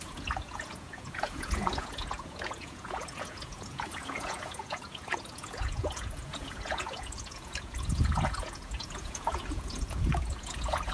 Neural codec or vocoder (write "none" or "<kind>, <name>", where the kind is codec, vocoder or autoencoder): vocoder, Vocos